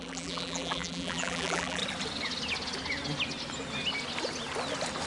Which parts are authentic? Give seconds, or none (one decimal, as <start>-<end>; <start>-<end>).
1.8-5.1